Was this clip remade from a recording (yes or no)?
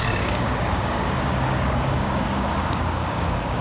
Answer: yes